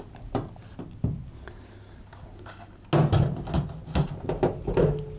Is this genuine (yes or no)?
yes